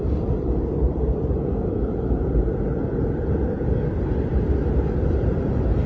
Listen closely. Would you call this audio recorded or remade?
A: remade